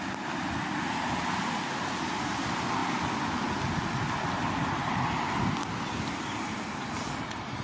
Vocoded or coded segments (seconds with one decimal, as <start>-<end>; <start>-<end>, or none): none